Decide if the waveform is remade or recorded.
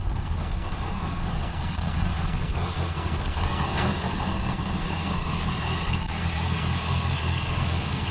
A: remade